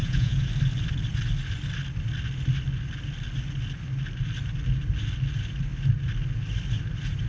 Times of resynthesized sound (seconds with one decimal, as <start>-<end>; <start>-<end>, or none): 0.0-0.5